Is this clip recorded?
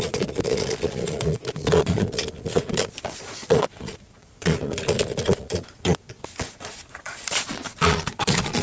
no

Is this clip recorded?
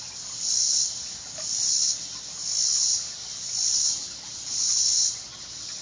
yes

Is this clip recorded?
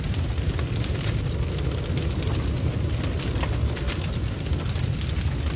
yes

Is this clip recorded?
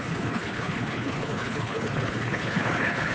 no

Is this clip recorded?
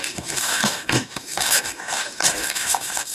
no